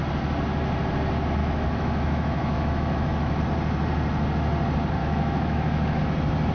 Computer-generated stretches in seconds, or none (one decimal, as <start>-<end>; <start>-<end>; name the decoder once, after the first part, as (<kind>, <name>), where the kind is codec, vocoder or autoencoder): 1.4-3.4 (autoencoder, DAC-VAE); 5.0-6.0